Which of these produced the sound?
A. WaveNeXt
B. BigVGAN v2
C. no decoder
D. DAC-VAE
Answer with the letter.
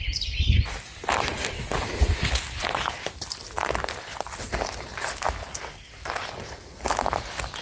C